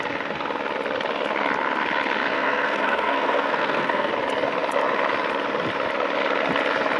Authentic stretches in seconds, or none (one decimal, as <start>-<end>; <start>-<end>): 0.0-2.3; 4.1-7.0